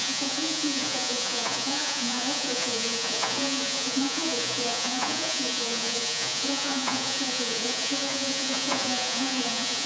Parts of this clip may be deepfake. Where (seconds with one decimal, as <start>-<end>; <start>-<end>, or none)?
0.0-9.9